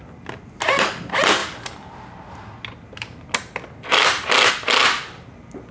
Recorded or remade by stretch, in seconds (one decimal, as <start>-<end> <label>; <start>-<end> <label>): 0.0-5.7 recorded